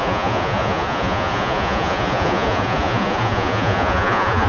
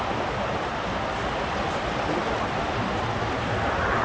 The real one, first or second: second